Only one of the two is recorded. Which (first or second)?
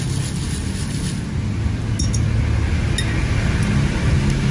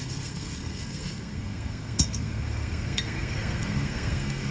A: first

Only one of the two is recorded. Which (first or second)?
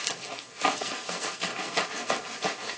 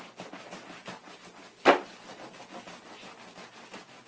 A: second